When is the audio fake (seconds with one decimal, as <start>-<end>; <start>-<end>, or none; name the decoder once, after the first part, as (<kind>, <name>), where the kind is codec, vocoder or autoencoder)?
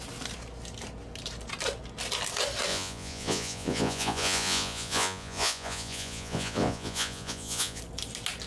2.7-7.8 (vocoder, Vocos)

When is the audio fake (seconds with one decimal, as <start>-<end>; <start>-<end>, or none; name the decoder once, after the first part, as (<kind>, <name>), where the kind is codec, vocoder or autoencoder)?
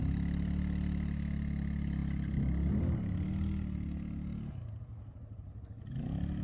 none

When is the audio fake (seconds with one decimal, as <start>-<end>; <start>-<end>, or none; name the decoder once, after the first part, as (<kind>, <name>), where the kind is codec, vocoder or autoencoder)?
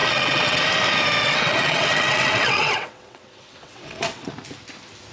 0.0-0.6 (vocoder, WaveNeXt); 1.2-4.3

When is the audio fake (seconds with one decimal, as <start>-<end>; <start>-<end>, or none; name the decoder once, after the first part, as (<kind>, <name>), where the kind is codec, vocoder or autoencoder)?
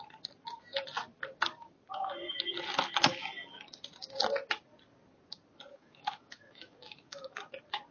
5.7-7.5 (autoencoder, DAC-VAE)